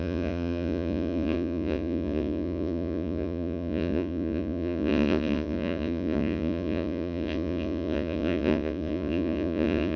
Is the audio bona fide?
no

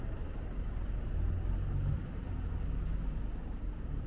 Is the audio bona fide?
yes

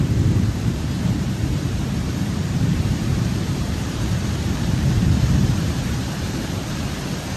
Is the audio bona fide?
no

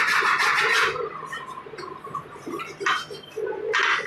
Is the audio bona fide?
yes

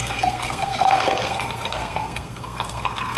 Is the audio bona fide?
no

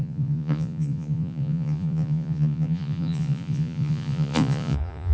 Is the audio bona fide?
no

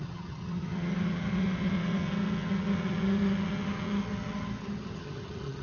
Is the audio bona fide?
no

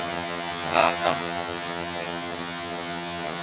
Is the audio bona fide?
no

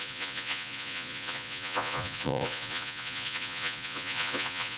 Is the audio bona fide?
no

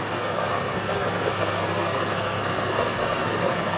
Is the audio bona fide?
no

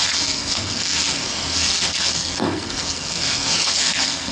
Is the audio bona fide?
no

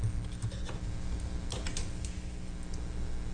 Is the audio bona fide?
yes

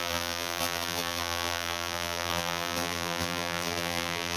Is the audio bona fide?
no